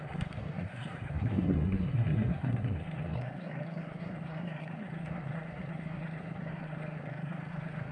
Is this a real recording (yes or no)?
no